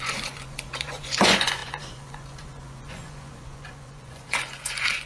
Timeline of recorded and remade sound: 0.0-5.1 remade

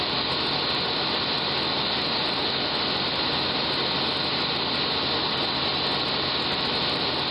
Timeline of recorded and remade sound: 0.0-7.3 recorded

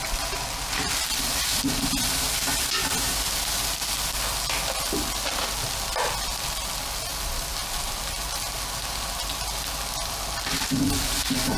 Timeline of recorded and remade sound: 0.0-11.6 recorded

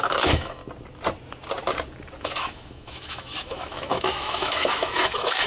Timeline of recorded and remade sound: 0.0-0.6 remade; 0.6-2.2 recorded; 2.2-5.5 remade

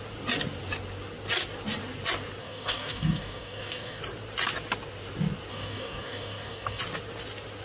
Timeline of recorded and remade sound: 0.0-2.4 recorded; 2.4-4.0 remade; 4.0-5.5 recorded; 5.5-6.8 remade; 6.8-7.6 recorded

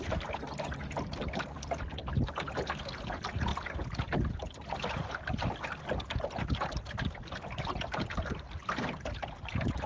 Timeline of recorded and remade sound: 0.0-9.9 recorded

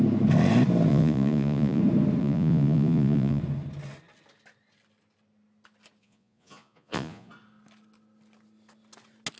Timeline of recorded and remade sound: 0.0-0.9 recorded; 0.9-1.8 remade; 1.8-2.2 recorded; 2.2-3.4 remade; 3.4-6.0 recorded; 6.0-7.3 remade; 7.3-9.4 recorded